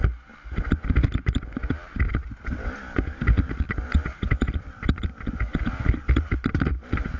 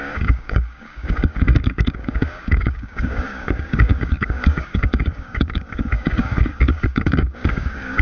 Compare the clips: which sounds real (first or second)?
first